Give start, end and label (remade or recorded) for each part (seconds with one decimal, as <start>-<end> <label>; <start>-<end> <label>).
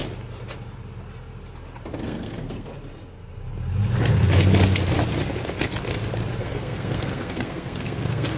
0.0-1.9 recorded; 1.9-2.7 remade; 2.7-6.4 recorded; 6.4-8.4 remade